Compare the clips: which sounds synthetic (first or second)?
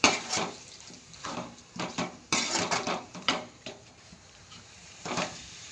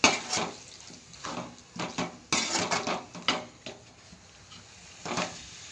first